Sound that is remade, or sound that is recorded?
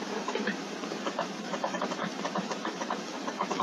remade